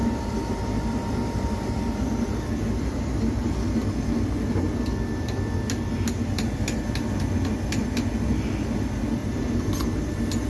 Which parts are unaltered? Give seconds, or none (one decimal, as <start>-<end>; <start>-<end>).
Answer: 3.5-9.2; 10.1-10.5